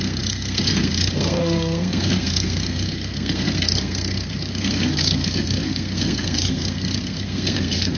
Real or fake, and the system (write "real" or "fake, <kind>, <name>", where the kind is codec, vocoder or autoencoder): fake, codec, SNAC